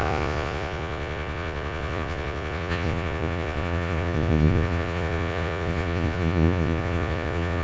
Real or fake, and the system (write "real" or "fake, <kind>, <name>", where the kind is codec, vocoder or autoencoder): fake, vocoder, Vocos